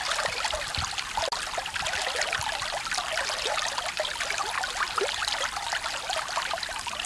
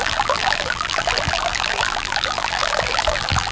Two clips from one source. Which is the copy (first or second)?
second